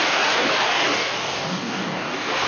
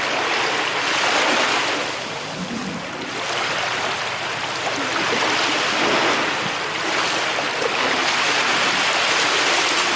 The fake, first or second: first